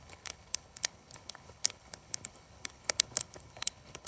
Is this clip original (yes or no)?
no